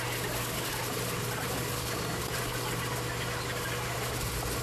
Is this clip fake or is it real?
real